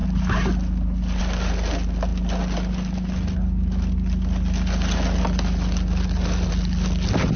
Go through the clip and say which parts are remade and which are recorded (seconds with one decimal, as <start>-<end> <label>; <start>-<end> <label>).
0.0-7.4 recorded